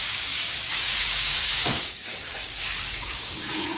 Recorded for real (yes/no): no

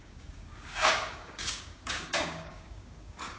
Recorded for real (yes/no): no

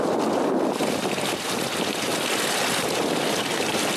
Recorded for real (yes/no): yes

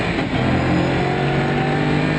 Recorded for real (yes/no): yes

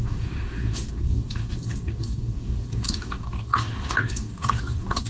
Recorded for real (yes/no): no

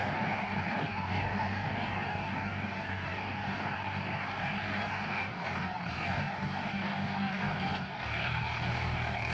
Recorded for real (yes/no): no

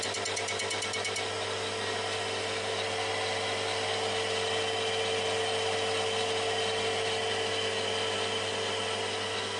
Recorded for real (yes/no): yes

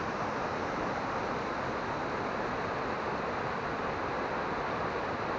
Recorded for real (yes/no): yes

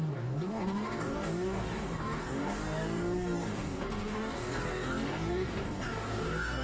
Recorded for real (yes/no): no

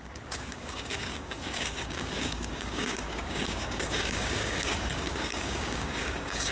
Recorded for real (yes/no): no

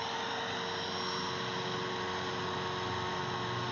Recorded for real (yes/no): yes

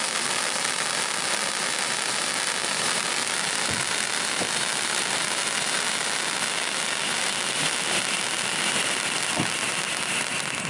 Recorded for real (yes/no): yes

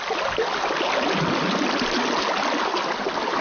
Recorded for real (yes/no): yes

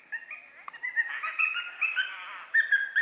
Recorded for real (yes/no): yes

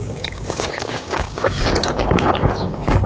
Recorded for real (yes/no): no